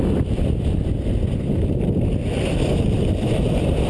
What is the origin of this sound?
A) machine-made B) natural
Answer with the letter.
B